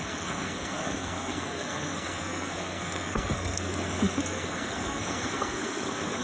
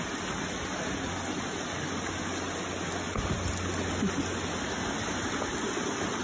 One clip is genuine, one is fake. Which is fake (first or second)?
first